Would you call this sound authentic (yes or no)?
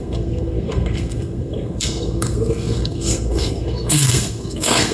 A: no